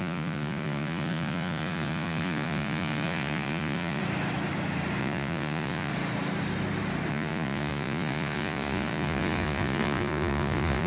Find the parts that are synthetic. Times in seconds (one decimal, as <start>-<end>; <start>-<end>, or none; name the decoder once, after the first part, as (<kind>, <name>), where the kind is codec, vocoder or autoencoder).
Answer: 0.0-4.0 (vocoder, Vocos); 5.0-5.9; 7.1-10.9

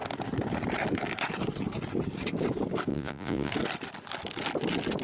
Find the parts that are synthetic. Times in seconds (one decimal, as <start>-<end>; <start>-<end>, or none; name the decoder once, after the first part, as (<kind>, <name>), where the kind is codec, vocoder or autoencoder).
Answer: 2.9-3.5 (vocoder, Vocos)

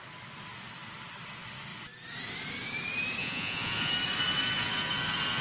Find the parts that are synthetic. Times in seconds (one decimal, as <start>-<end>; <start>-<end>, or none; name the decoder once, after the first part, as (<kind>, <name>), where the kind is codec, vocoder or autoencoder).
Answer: 3.2-3.9 (vocoder, Vocos)

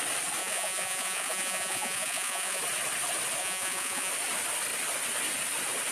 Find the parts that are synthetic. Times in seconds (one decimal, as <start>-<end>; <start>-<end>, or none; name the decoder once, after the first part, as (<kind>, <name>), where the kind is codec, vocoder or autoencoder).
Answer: 0.4-2.6 (vocoder, Vocos); 3.4-4.1

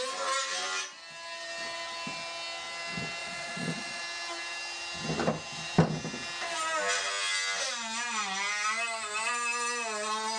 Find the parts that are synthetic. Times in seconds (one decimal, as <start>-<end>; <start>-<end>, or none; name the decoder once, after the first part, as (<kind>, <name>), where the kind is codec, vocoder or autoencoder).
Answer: 3.2-4.0 (vocoder, Vocos)

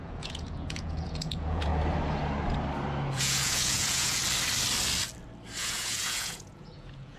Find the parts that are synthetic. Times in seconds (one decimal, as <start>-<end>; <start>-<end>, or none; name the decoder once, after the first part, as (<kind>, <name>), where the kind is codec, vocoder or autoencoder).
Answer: 0.0-1.7 (vocoder, Vocos); 3.1-4.2; 5.6-7.2

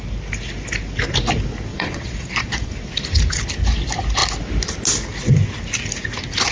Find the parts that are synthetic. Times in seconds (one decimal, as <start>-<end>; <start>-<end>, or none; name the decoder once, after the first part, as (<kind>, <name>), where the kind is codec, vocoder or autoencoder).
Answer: 1.7-2.7 (vocoder, Vocos)